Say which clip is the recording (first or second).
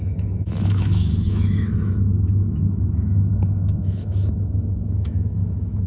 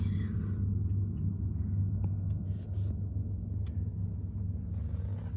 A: second